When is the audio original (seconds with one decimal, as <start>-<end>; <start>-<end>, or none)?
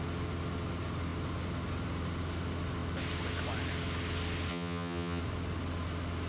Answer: 0.0-4.5; 5.2-6.3